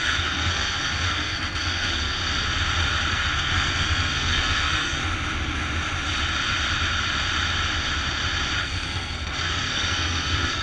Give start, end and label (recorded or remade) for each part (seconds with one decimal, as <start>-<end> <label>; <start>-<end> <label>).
0.0-2.2 remade; 2.2-3.1 recorded; 3.1-5.0 remade; 5.0-8.6 recorded; 8.6-10.6 remade